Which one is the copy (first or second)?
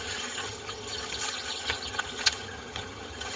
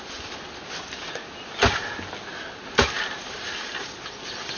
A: first